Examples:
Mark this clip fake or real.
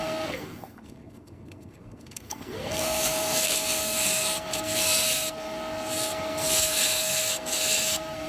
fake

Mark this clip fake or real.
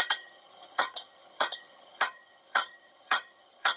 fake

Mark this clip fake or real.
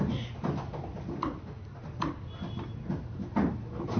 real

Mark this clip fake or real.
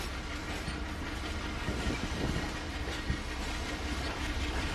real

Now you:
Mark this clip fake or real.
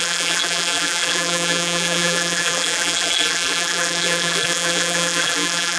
fake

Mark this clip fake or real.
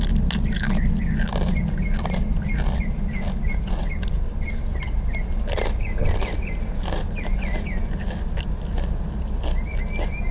real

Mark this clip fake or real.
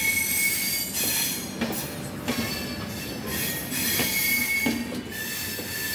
real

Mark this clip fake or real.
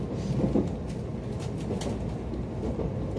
real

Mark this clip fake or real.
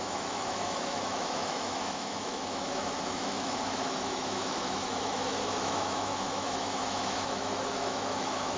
fake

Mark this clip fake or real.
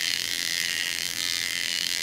fake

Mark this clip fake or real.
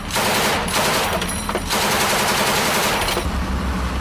real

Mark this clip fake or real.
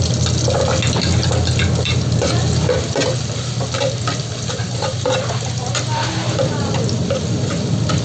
real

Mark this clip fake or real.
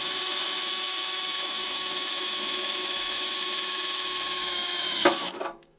fake